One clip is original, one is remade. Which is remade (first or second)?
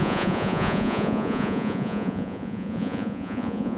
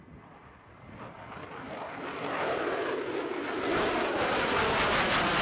first